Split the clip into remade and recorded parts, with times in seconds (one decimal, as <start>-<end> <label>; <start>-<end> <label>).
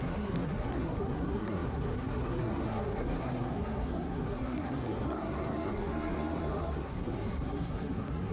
0.0-8.3 remade